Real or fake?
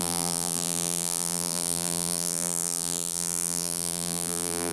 fake